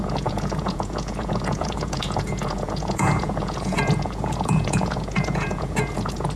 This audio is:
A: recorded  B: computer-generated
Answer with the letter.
B